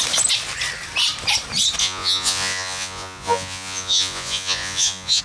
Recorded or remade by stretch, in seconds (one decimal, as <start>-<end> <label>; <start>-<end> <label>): 0.0-1.8 recorded; 1.8-5.2 remade